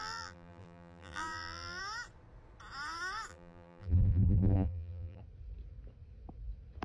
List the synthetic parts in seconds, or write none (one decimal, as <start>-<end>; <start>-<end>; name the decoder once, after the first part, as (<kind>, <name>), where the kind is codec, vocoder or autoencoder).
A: 0.0-1.8 (vocoder, BigVGAN v2); 3.3-5.2